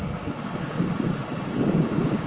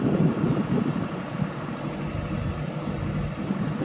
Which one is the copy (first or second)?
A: first